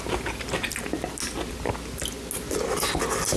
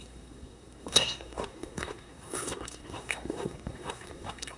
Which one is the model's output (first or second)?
second